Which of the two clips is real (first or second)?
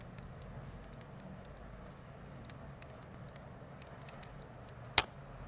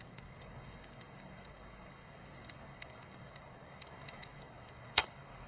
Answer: first